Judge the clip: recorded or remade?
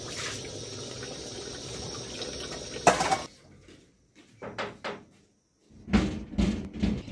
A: recorded